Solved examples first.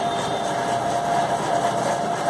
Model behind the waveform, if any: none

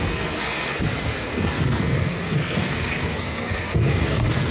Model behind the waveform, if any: codec, SNAC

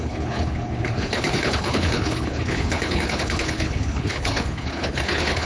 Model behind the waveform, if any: codec, HILCodec